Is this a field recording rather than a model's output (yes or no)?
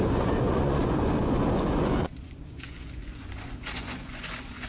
no